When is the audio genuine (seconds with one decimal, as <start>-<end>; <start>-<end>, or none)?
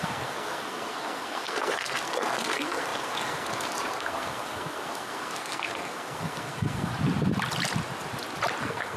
6.9-8.6